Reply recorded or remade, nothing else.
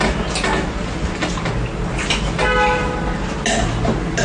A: recorded